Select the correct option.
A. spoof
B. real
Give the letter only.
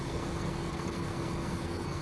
A